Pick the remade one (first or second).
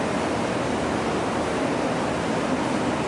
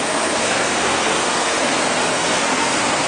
second